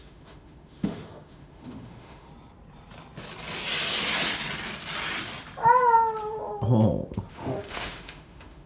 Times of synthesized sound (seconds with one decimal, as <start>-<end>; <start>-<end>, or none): 0.0-2.3; 7.3-8.7